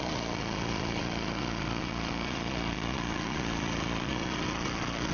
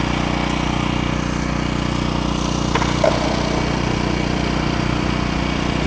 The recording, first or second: second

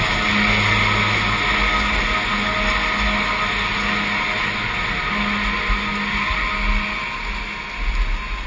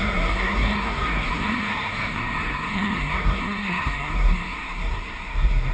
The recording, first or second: first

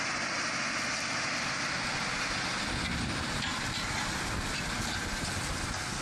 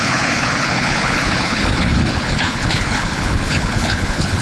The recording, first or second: first